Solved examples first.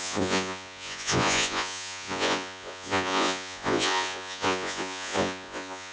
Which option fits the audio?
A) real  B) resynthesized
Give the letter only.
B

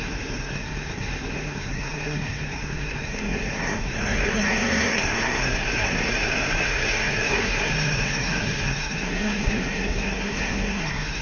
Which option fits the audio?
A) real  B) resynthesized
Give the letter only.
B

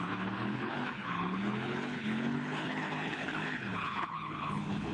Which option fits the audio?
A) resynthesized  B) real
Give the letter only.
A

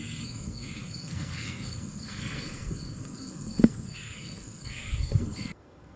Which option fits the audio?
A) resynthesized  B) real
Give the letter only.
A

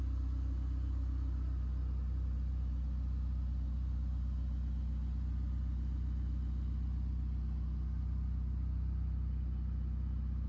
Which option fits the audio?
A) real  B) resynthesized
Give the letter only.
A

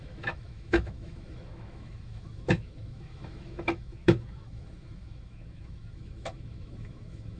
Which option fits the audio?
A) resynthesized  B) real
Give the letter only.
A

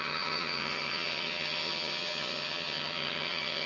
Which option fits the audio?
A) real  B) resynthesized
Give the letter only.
B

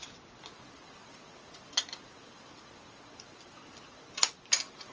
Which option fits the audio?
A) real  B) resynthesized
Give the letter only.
A